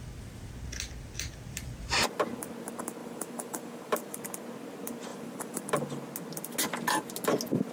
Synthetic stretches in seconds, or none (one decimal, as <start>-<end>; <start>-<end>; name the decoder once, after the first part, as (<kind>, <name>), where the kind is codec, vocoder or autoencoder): 3.0-4.2 (vocoder, BigVGAN v2); 5.1-5.7